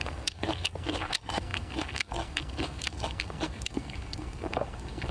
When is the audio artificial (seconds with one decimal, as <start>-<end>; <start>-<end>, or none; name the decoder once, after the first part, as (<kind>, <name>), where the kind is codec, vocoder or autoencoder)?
0.0-5.1 (codec, SNAC)